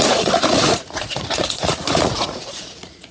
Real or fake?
fake